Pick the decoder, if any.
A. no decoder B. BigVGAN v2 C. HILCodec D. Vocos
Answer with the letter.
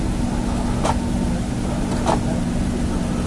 A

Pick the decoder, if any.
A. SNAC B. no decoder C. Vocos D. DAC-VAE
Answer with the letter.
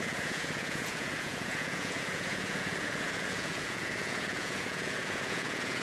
C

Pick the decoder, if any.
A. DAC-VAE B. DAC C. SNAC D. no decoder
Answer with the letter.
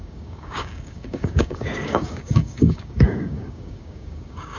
B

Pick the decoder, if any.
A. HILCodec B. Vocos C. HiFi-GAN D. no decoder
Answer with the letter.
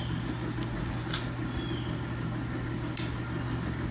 D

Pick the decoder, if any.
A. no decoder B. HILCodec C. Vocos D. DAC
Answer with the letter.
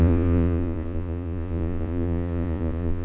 C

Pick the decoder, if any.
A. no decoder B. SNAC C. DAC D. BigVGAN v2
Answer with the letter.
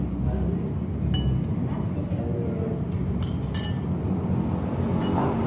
A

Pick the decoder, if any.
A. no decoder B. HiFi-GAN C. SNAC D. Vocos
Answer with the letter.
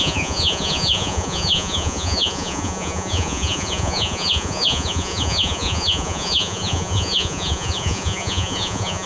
D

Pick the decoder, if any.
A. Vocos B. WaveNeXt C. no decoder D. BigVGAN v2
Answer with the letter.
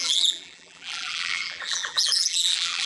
D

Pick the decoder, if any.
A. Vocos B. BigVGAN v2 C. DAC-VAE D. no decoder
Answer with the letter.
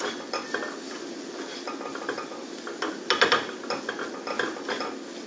D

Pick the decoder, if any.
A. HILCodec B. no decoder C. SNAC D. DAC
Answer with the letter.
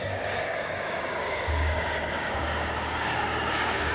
D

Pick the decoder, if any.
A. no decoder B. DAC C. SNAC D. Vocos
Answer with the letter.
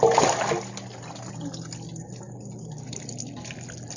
A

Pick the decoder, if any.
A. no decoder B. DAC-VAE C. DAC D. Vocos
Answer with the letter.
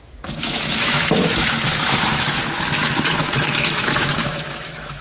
B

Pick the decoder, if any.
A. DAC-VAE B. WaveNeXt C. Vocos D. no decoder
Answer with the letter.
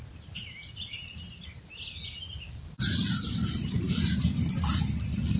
D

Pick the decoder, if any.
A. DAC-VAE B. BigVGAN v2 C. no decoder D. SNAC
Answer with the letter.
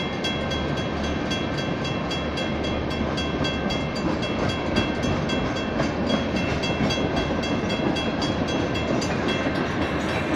C